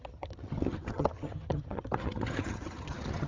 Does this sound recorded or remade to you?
remade